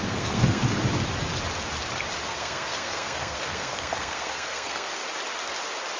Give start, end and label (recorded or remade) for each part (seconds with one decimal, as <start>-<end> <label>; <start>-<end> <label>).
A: 0.0-0.6 remade; 0.6-2.3 recorded; 2.3-5.0 remade; 5.0-6.0 recorded